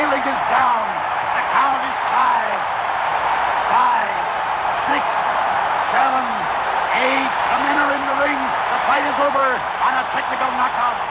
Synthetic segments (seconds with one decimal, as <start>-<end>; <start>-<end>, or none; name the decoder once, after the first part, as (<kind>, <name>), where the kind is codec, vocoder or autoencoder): 0.0-6.0 (vocoder, BigVGAN v2); 7.4-9.4